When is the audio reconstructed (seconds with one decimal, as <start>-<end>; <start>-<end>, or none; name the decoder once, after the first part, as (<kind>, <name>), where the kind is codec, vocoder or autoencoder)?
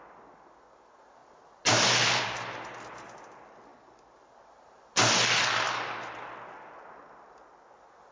none